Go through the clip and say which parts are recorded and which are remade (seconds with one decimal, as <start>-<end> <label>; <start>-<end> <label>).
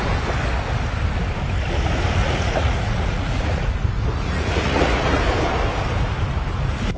0.0-2.2 recorded; 2.2-5.2 remade; 5.2-7.0 recorded